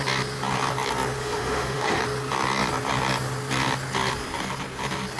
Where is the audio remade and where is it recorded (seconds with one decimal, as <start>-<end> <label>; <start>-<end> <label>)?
0.0-1.2 recorded; 1.2-2.0 remade; 2.0-5.2 recorded

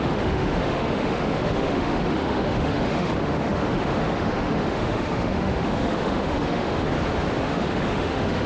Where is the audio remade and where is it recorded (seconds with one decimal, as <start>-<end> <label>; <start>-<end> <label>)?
0.0-6.9 remade; 6.9-7.4 recorded; 7.4-8.5 remade